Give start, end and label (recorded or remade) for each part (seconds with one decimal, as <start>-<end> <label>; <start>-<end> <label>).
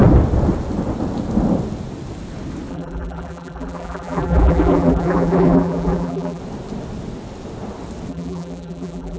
0.0-2.7 recorded; 2.7-6.4 remade; 6.4-8.1 recorded; 8.1-9.2 remade